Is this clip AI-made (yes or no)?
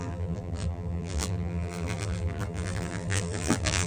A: yes